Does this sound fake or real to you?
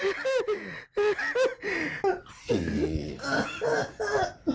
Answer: real